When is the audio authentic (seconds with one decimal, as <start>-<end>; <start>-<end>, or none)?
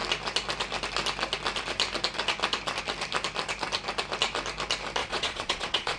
0.0-5.0